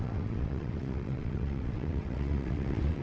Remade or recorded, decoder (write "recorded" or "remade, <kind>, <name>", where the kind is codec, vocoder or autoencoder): remade, vocoder, WaveNeXt